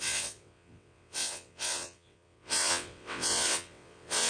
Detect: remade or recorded remade